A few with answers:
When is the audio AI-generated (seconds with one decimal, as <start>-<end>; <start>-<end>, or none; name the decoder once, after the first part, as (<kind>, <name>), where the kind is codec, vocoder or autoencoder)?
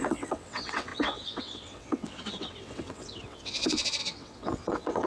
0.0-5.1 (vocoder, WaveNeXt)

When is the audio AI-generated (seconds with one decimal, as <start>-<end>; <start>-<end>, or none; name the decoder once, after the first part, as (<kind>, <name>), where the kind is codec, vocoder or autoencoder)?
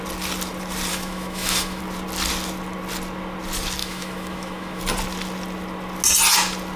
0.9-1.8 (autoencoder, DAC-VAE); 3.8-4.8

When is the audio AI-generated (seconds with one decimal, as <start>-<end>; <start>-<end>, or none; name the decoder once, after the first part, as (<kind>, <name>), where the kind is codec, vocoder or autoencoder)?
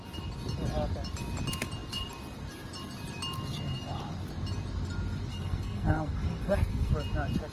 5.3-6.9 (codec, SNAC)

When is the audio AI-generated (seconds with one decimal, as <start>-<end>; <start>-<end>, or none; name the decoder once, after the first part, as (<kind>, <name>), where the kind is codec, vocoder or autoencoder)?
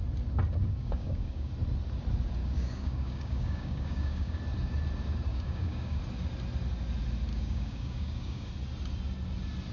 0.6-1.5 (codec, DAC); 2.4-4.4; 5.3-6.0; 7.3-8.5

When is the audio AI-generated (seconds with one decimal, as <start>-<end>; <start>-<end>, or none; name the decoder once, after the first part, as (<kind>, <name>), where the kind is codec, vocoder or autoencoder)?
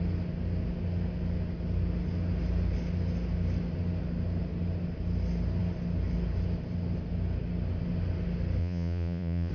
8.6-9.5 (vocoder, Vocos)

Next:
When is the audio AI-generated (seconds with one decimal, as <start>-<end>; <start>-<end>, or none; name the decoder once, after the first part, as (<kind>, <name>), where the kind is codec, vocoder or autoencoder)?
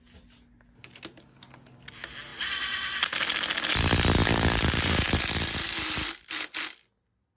2.3-3.0 (vocoder, BigVGAN v2); 4.2-5.2